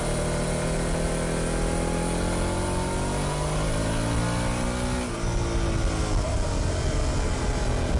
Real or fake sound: real